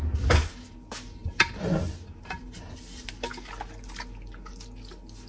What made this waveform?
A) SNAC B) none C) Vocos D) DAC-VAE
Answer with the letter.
B